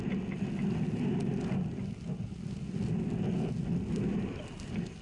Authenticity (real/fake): real